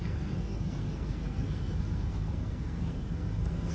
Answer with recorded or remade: remade